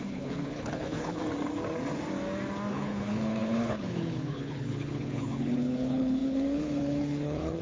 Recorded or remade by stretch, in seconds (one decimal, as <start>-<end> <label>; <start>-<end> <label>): 0.0-1.2 remade; 1.2-2.7 recorded; 2.7-7.6 remade